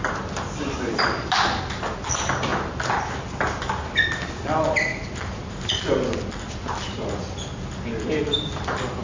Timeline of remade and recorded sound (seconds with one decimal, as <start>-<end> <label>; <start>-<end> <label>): 0.0-9.0 recorded